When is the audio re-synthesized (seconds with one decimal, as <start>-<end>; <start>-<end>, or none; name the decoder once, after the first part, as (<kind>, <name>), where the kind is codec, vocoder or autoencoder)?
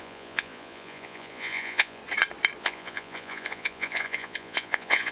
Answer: 0.0-2.0 (vocoder, Vocos); 2.6-5.1